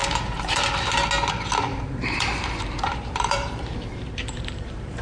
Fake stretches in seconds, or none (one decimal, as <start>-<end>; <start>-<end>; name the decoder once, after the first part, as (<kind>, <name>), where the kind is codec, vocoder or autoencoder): 0.0-0.6 (vocoder, BigVGAN v2); 1.7-5.0